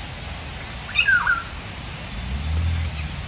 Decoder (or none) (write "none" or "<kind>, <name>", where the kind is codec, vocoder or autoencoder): none